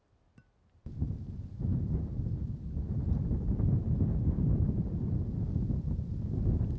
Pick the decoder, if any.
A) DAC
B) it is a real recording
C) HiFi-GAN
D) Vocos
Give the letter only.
B